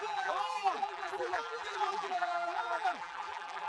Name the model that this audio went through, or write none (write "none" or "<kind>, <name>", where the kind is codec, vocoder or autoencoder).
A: vocoder, BigVGAN v2